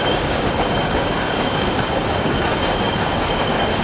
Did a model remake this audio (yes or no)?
yes